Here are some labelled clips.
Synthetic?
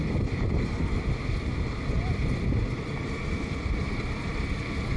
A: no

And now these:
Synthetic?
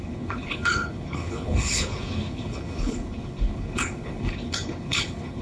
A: yes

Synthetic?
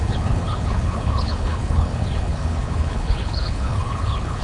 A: yes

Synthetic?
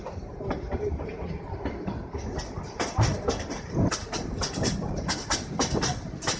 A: no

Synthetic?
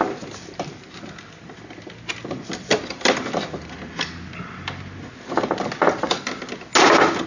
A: no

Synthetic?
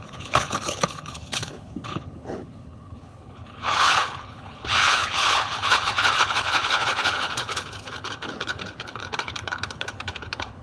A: yes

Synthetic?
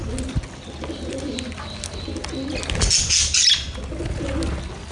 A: no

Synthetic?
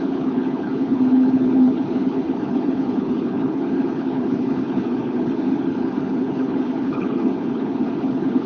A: yes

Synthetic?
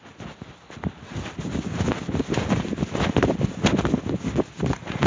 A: no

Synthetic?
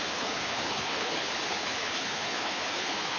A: yes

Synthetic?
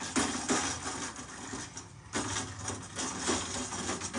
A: no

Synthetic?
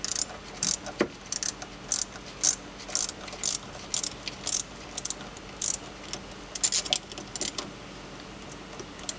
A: no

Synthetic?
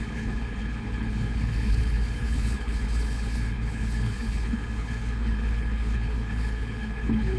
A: yes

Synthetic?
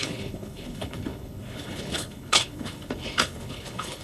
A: yes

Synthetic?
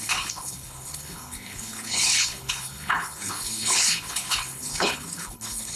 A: yes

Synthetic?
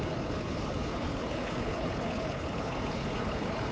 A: yes